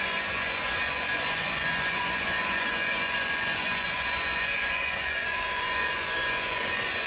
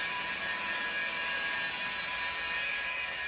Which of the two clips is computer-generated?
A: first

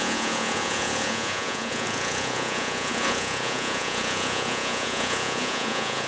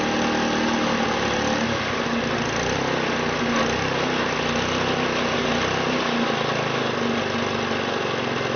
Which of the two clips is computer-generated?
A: first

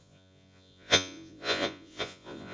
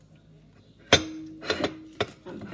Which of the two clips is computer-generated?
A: first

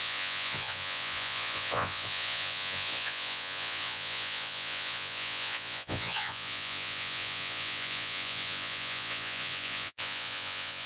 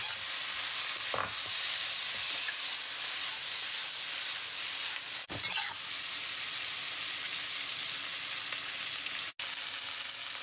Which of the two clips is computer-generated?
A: first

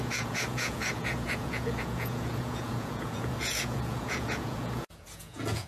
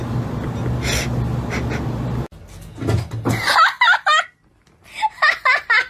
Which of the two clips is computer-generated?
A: first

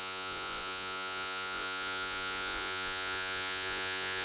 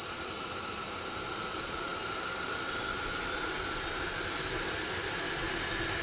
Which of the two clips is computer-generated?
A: first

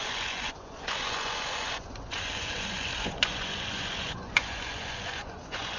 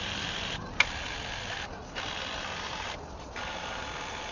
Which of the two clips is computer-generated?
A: first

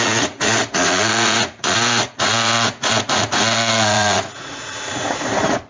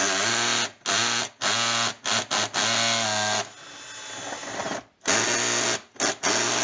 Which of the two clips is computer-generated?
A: first